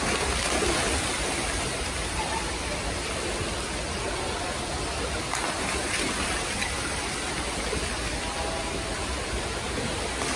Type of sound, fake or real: real